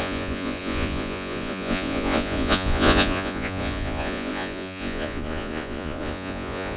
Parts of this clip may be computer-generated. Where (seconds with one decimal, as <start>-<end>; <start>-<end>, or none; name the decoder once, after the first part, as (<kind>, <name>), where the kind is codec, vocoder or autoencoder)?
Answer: 0.0-6.8 (vocoder, Vocos)